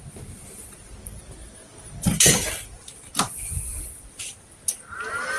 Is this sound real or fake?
real